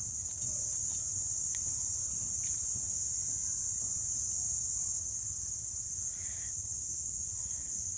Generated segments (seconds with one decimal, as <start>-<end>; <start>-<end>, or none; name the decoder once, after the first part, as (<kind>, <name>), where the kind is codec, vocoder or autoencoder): 0.8-1.7 (vocoder, Vocos); 7.2-8.0